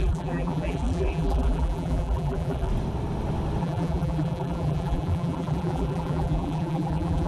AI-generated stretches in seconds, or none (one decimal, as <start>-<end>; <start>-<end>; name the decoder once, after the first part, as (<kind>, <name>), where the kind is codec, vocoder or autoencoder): 0.0-2.7 (vocoder, BigVGAN v2); 3.6-7.3